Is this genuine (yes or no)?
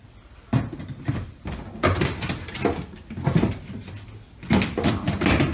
yes